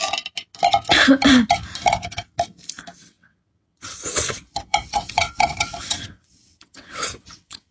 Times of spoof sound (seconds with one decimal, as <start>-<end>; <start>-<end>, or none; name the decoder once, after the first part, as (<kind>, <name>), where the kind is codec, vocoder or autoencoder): 3.0-7.7 (vocoder, WaveNeXt)